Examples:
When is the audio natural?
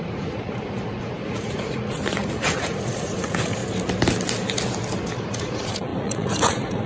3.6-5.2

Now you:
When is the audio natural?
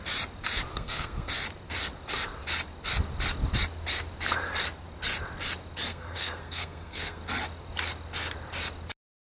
0.0-0.7; 1.3-5.9; 7.2-9.4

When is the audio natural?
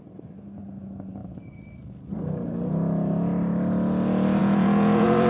0.0-4.4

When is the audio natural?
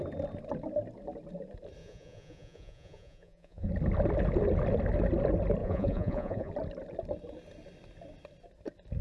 0.0-1.8; 3.7-5.6; 6.5-9.0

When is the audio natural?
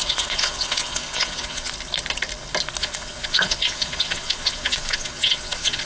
1.7-2.8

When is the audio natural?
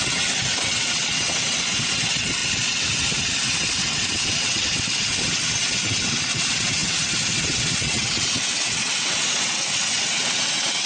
none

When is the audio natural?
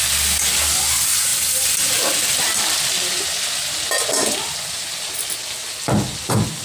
0.0-6.6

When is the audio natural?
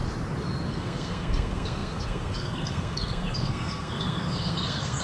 0.0-0.7